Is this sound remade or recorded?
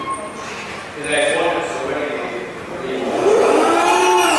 recorded